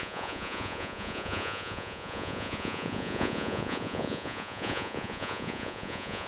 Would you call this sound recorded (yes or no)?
no